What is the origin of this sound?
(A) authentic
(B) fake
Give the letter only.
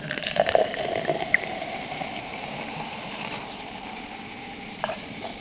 B